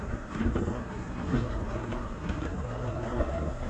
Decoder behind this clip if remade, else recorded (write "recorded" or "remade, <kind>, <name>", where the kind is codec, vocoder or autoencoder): remade, codec, SNAC